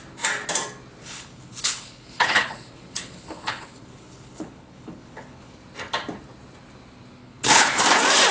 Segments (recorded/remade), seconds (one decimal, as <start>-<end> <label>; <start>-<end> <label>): 0.0-1.0 recorded; 1.0-5.5 remade; 5.5-7.2 recorded; 7.2-7.8 remade; 7.8-8.3 recorded